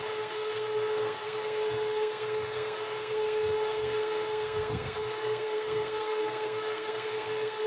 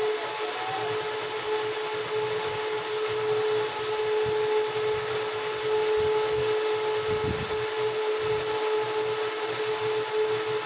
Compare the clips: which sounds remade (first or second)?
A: first